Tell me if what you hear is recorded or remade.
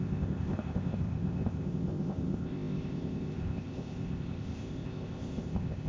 remade